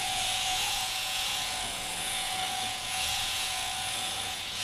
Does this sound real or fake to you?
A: fake